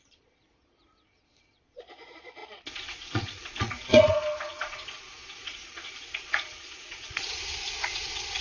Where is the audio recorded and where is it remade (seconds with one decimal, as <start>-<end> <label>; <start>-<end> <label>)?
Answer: 0.0-8.4 remade